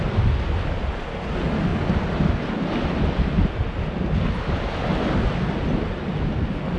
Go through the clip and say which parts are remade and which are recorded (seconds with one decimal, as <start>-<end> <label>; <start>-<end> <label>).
0.0-6.8 recorded